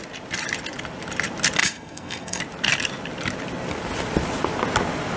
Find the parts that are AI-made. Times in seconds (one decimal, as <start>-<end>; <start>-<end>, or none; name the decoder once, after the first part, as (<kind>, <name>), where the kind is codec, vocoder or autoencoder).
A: 1.6-2.4 (codec, SNAC)